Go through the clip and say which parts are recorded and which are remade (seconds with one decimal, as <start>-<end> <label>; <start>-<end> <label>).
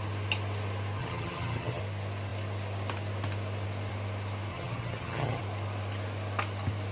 0.0-1.0 recorded; 1.0-1.8 remade; 1.8-4.5 recorded; 4.5-5.4 remade; 5.4-6.9 recorded